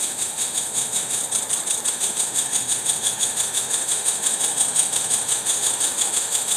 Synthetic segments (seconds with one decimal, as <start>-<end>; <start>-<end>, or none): 0.0-1.2; 1.9-6.6